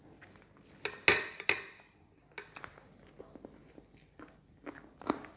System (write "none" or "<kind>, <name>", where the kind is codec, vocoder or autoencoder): none